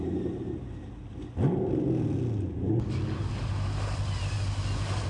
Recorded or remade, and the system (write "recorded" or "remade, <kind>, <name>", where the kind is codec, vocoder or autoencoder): recorded